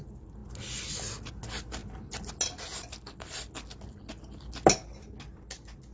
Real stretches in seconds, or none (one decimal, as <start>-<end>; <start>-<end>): 0.0-5.9